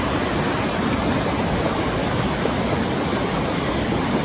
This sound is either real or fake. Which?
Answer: real